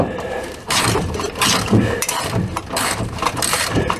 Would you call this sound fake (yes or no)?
yes